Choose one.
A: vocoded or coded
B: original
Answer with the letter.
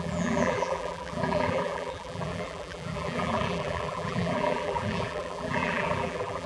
A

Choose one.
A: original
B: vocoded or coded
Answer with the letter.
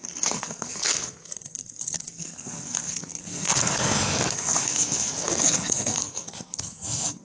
B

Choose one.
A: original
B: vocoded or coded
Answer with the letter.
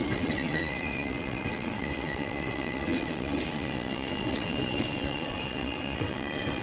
B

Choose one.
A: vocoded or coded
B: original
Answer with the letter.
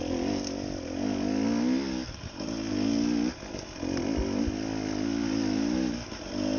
B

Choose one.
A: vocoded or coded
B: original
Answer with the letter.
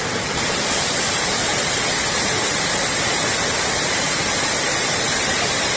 A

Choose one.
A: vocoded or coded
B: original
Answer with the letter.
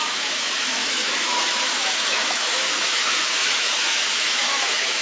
A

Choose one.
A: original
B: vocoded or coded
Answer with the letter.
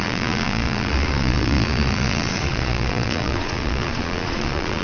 B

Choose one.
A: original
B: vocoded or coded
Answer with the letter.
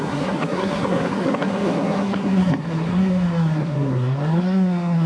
B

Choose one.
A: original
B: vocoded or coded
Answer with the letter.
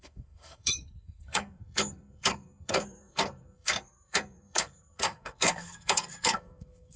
B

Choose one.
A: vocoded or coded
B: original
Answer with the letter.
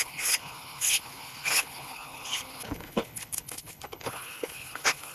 A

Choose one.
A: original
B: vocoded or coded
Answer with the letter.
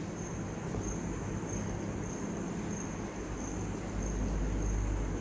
A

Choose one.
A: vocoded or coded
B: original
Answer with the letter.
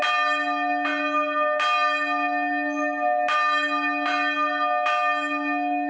B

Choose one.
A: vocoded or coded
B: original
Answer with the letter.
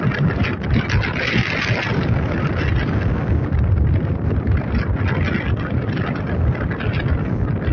B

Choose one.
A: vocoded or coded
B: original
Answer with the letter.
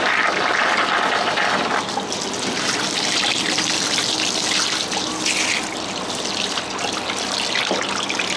B